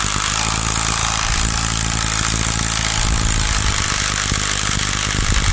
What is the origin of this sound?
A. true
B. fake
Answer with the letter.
A